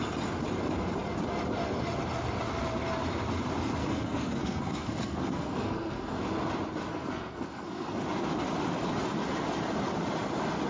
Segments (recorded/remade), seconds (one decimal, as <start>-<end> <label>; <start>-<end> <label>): 0.0-3.8 recorded; 3.8-6.2 remade; 6.2-6.9 recorded; 6.9-8.0 remade; 8.0-10.7 recorded

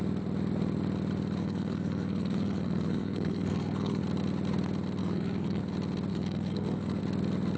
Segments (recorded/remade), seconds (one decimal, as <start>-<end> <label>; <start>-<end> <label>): 0.0-1.4 recorded; 1.4-4.0 remade; 4.0-5.0 recorded; 5.0-5.6 remade; 5.6-6.1 recorded; 6.1-7.0 remade; 7.0-7.6 recorded

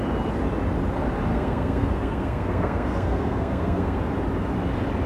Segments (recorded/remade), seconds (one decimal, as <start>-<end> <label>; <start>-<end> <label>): 0.0-1.3 recorded; 1.3-4.0 remade; 4.0-5.1 recorded

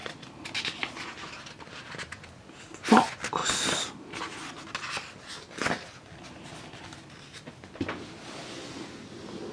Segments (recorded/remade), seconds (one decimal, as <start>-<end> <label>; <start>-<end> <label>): 0.0-9.5 recorded